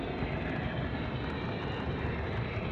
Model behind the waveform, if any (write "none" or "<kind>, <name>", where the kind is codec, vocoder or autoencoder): none